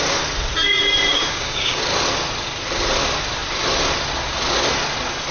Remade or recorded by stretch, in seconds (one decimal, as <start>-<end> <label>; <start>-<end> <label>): 0.0-1.1 recorded; 1.1-1.8 remade; 1.8-5.3 recorded